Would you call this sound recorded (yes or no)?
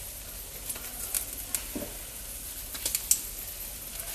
yes